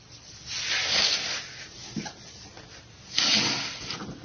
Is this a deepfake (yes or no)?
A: no